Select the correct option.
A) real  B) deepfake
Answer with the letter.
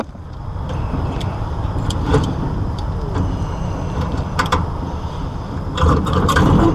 B